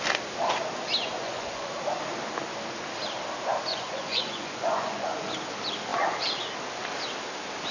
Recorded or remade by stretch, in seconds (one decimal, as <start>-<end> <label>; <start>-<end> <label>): 0.0-1.0 recorded; 1.0-1.7 remade; 1.7-3.7 recorded; 3.7-5.3 remade; 5.3-7.7 recorded